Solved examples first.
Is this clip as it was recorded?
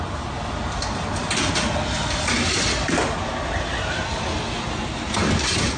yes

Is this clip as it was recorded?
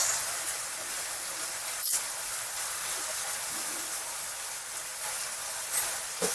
yes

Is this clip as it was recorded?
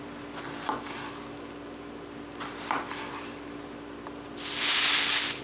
yes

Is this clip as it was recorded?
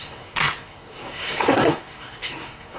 no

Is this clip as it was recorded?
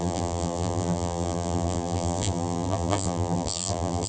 no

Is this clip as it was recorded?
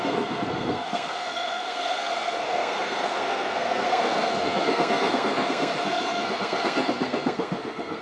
no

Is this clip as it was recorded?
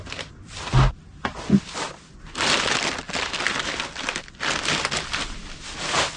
yes